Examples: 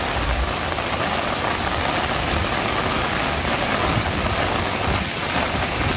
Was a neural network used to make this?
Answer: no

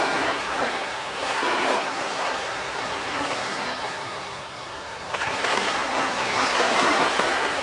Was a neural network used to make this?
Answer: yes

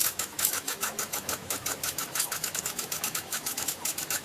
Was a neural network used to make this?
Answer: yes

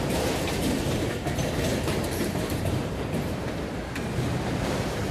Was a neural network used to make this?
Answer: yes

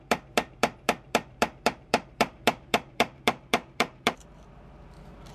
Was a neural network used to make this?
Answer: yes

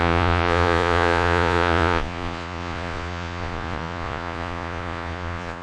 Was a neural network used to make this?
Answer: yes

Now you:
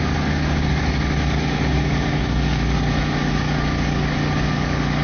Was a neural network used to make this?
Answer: yes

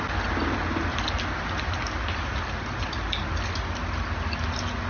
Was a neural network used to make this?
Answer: no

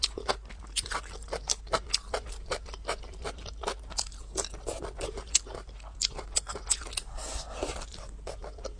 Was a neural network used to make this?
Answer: no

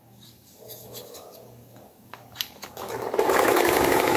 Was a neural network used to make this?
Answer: yes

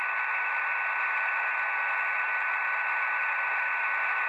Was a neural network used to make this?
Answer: no